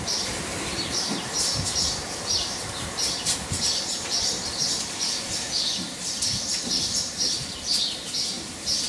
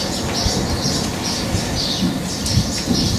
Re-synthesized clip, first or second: first